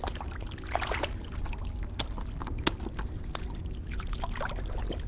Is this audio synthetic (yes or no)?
no